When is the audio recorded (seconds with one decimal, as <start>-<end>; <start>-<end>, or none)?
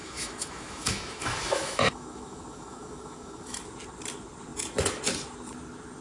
3.6-6.0